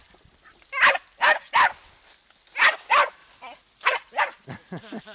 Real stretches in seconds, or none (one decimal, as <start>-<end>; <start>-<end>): 0.0-5.1